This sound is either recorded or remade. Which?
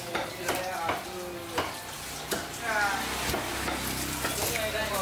recorded